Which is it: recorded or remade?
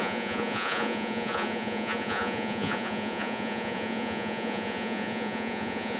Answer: remade